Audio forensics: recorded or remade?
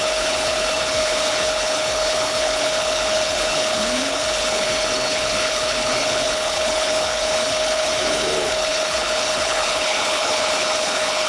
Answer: remade